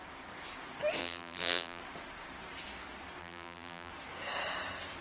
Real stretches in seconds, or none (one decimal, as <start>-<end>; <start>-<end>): 0.0-1.0; 1.8-3.2; 3.9-5.0